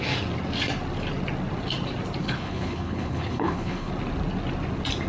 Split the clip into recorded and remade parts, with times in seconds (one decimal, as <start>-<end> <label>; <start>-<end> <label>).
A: 0.0-2.2 recorded; 2.2-3.9 remade; 3.9-5.1 recorded